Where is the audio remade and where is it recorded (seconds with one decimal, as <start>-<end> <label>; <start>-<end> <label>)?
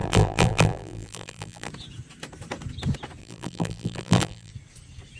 0.0-1.7 remade; 1.7-3.2 recorded; 3.2-4.5 remade; 4.5-5.2 recorded